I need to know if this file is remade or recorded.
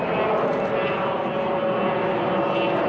recorded